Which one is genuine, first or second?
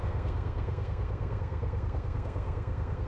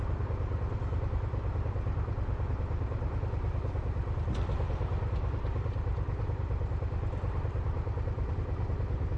second